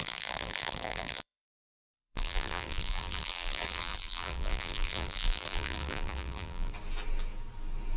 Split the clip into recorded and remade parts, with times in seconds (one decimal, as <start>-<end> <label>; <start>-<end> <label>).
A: 0.0-6.7 remade; 6.7-8.0 recorded